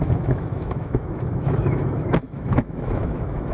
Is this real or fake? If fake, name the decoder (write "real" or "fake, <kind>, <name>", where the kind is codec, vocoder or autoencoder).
fake, autoencoder, DAC-VAE